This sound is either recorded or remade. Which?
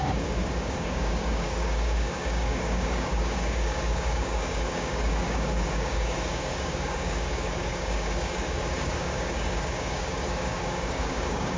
remade